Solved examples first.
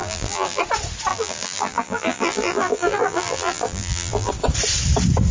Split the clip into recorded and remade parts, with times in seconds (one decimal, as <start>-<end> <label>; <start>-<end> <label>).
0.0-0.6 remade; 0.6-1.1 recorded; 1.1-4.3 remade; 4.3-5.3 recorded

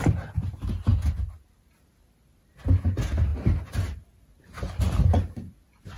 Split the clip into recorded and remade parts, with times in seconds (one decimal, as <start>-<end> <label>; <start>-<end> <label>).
0.0-6.0 recorded

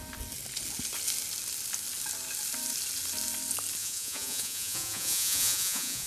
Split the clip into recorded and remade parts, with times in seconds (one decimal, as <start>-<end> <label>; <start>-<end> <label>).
0.0-3.8 recorded; 3.8-6.1 remade